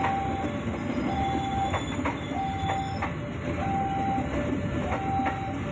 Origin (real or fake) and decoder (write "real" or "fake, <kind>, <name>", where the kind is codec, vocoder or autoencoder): real